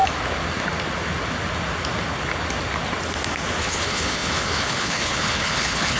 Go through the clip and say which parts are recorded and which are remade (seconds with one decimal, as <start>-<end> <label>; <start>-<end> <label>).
0.0-3.6 recorded; 3.6-6.0 remade